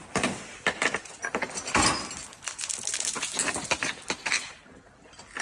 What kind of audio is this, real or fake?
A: real